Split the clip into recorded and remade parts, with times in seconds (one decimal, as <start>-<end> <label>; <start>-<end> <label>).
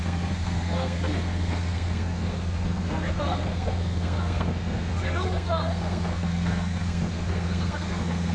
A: 0.0-8.3 remade